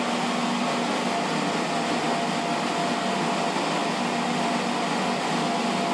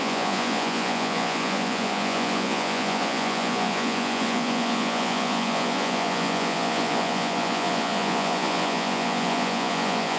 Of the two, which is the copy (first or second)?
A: second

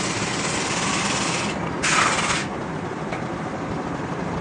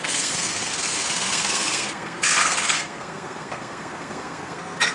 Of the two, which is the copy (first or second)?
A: second